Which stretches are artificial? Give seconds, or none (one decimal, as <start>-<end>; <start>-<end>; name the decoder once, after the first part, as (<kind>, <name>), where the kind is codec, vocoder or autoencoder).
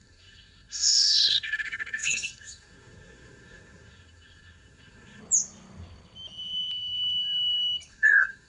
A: 0.0-5.2 (codec, SNAC); 7.9-8.5